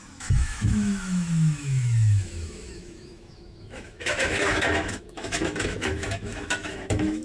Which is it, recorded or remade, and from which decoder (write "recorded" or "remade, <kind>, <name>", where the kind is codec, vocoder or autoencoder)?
remade, autoencoder, DAC-VAE